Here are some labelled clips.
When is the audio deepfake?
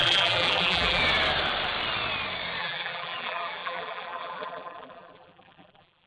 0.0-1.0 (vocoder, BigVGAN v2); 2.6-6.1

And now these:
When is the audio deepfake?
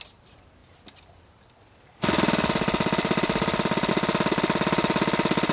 none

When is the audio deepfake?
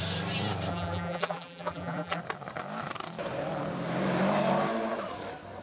0.7-2.2 (vocoder, BigVGAN v2)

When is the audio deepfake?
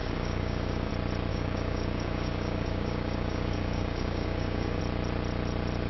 0.0-0.9 (codec, DAC); 1.3-4.8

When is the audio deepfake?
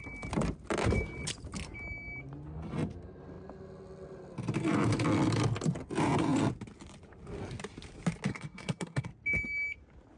8.3-9.1 (codec, SNAC)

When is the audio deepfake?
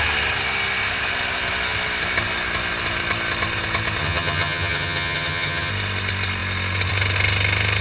4.0-5.7 (vocoder, HiFi-GAN)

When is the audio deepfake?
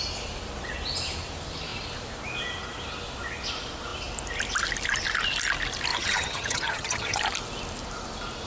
5.9-7.2 (vocoder, HiFi-GAN)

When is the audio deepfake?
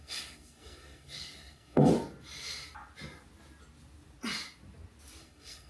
0.0-1.9 (codec, SNAC); 5.2-5.7